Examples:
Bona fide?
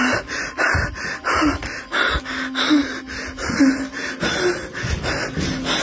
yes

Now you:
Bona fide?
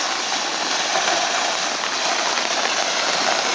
yes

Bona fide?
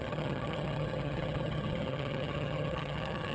no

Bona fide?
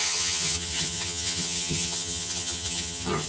no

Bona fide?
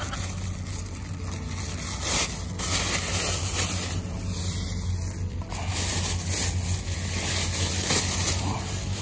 yes